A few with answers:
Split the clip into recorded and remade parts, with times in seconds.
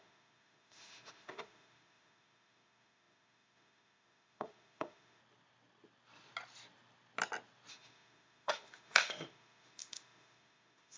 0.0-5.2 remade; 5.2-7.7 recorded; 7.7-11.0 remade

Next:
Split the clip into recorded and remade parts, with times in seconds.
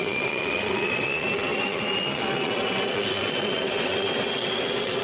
0.0-5.0 remade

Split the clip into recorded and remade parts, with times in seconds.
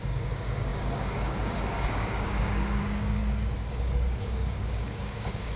0.0-3.2 remade; 3.2-3.7 recorded; 3.7-5.6 remade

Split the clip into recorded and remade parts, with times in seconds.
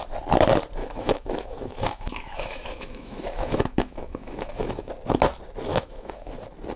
0.0-0.8 recorded; 0.8-4.9 remade; 4.9-5.7 recorded; 5.7-6.3 remade; 6.3-6.8 recorded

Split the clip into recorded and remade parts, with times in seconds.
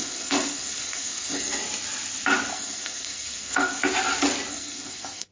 0.0-1.6 remade; 1.6-2.5 recorded; 2.5-3.8 remade; 3.8-4.5 recorded; 4.5-5.3 remade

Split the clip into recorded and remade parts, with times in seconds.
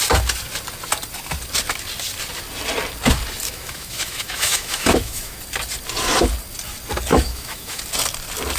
0.0-3.4 recorded; 3.4-5.4 remade; 5.4-7.1 recorded; 7.1-7.8 remade; 7.8-8.6 recorded